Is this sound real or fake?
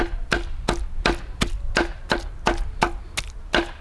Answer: real